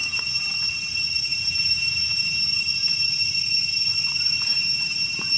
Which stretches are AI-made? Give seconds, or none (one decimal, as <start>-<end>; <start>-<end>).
0.0-0.7; 1.3-2.4; 4.5-5.4